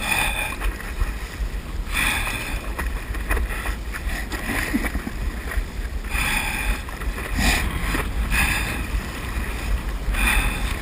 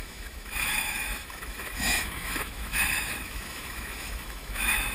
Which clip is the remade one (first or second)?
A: second